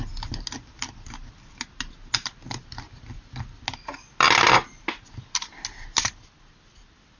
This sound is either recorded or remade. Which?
recorded